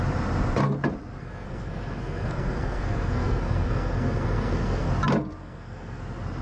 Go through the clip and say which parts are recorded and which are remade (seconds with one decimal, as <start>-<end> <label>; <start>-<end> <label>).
0.0-1.2 recorded; 1.2-4.9 remade; 4.9-5.4 recorded; 5.4-6.0 remade; 6.0-6.4 recorded